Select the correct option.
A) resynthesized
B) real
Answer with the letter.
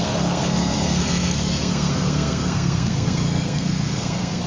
A